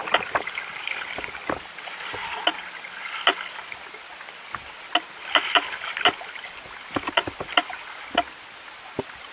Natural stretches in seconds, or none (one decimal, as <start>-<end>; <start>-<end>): 0.0-9.3